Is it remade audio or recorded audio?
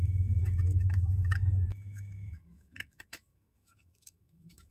remade